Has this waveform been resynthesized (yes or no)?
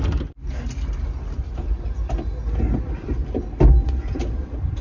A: no